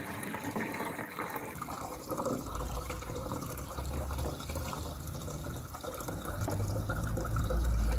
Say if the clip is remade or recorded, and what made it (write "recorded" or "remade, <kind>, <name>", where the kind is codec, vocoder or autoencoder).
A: remade, vocoder, BigVGAN v2